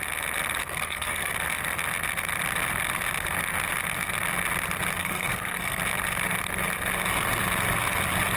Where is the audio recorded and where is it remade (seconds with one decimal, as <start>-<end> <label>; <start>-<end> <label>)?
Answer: 0.0-0.6 recorded; 0.6-1.3 remade; 1.3-5.0 recorded; 5.0-5.8 remade; 5.8-8.4 recorded